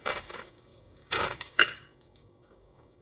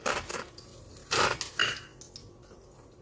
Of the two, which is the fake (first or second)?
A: first